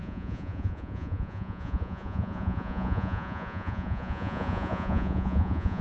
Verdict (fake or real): fake